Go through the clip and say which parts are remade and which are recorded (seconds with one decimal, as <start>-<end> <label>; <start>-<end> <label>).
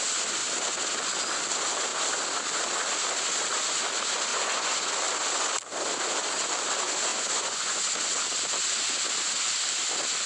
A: 0.0-4.3 recorded; 4.3-4.9 remade; 4.9-7.1 recorded; 7.1-7.8 remade; 7.8-10.3 recorded